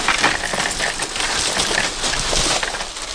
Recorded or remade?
recorded